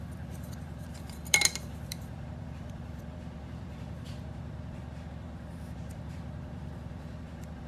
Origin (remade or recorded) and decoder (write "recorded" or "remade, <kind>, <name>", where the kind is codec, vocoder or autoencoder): remade, vocoder, BigVGAN v2